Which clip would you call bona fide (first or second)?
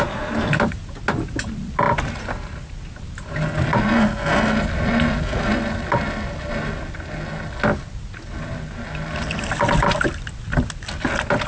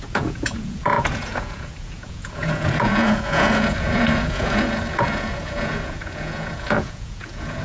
first